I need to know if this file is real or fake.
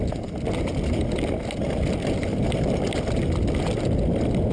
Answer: real